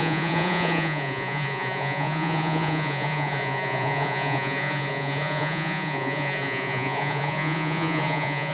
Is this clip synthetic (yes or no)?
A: yes